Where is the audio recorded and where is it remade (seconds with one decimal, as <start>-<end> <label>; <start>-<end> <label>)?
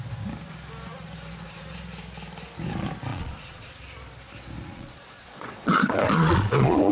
0.0-3.1 recorded; 3.1-3.7 remade; 3.7-4.7 recorded; 4.7-6.9 remade